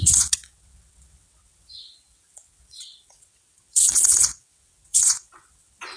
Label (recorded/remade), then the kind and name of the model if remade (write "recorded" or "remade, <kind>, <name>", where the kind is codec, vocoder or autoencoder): remade, vocoder, WaveNeXt